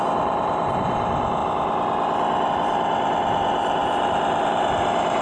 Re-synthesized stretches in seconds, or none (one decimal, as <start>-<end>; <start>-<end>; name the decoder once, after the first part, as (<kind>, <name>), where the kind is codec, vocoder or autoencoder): 0.0-1.4 (vocoder, BigVGAN v2); 2.5-5.2